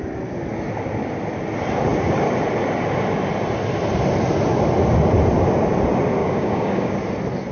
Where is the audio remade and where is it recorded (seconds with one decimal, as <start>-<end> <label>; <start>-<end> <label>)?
0.0-6.2 recorded; 6.2-7.0 remade; 7.0-7.5 recorded